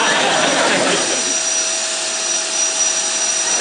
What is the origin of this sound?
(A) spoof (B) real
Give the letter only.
A